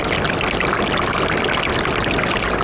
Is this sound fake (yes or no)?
no